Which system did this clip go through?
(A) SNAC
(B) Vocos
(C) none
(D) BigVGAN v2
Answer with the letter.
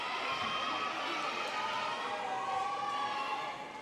C